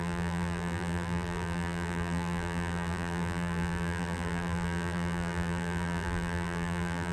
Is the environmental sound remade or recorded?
remade